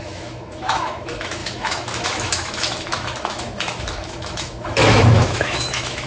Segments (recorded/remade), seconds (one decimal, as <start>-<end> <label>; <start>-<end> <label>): 0.0-6.1 remade